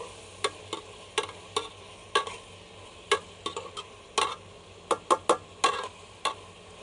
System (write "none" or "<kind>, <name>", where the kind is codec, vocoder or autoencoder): none